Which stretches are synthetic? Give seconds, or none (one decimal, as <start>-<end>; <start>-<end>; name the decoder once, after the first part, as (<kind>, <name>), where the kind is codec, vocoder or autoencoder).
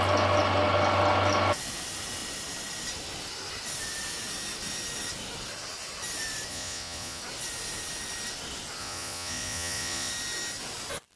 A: 6.5-7.2 (vocoder, Vocos); 8.8-10.1